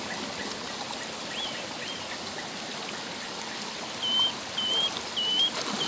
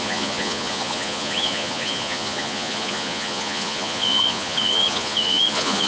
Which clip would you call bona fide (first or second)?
first